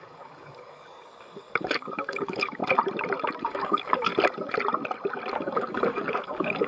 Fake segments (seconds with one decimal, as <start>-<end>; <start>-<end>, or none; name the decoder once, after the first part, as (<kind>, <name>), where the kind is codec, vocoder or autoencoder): 0.0-2.6 (codec, DAC); 3.4-4.1; 5.3-6.7